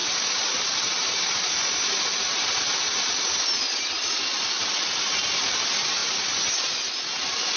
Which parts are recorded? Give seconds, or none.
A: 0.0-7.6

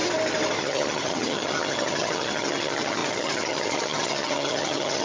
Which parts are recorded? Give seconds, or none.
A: 0.0-0.6

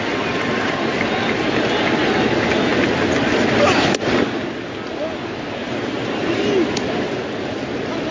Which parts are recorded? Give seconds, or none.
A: 0.0-8.1

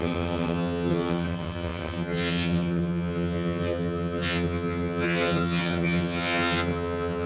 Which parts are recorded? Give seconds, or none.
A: none

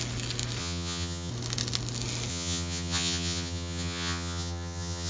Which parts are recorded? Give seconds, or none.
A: 0.0-0.6; 1.3-2.3